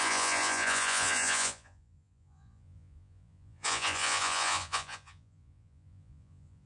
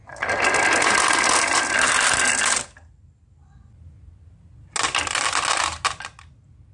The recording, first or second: second